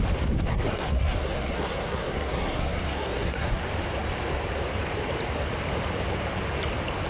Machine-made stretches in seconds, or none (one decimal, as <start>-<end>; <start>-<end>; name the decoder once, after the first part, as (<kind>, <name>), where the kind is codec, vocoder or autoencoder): 0.5-3.6 (codec, SNAC)